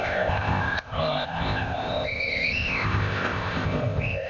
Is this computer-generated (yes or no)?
yes